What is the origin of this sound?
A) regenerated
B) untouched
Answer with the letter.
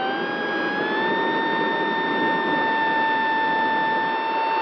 B